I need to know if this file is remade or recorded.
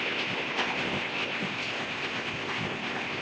remade